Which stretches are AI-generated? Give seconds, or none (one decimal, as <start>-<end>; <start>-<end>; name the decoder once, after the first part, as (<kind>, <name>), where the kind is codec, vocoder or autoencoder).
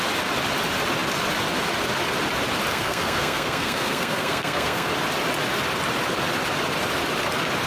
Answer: 2.7-4.9 (codec, SNAC)